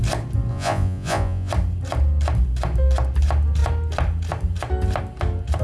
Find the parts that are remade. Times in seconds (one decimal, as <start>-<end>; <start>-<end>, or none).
0.5-1.5